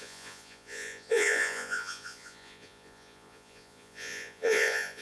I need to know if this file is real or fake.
fake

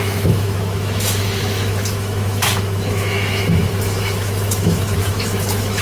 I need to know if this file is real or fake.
fake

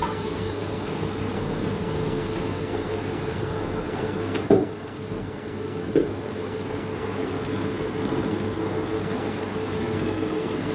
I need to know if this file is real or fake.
fake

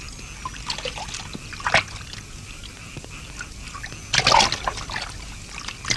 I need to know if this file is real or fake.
real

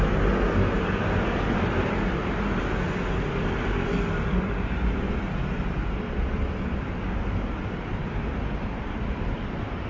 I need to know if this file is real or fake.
real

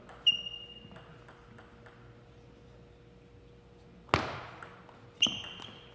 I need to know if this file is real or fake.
real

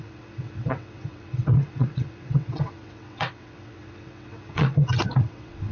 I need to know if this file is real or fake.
fake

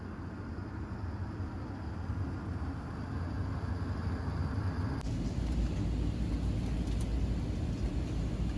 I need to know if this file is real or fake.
real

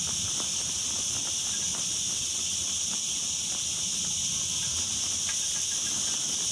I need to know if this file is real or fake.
real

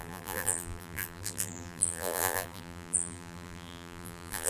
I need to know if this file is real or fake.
fake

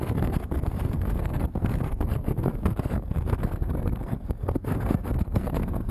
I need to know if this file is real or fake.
fake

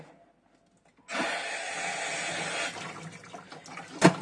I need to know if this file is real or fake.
real